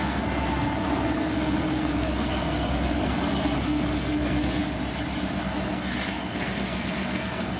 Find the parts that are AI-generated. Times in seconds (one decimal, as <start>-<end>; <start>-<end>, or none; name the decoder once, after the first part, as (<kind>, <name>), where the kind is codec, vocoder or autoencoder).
0.0-4.6 (codec, SNAC); 5.4-7.6